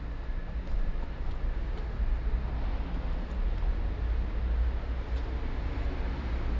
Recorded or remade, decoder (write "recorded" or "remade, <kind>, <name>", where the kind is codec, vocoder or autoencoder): recorded